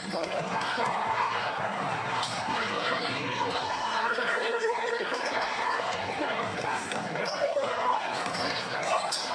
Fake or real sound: fake